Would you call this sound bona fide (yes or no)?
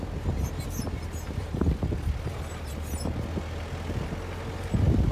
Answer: yes